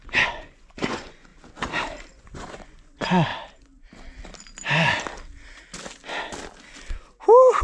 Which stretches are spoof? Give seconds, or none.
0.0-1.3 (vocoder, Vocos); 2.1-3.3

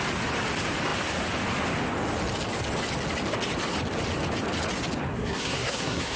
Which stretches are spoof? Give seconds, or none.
5.1-6.2 (codec, SNAC)